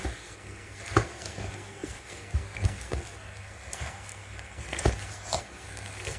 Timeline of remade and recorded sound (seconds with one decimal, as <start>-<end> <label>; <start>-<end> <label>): 0.0-6.2 remade